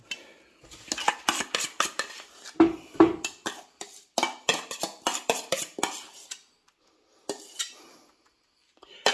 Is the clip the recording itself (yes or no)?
yes